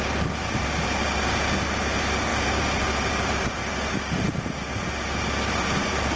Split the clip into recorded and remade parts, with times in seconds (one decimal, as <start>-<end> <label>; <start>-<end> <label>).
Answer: 0.0-3.6 remade; 3.6-4.9 recorded; 4.9-6.2 remade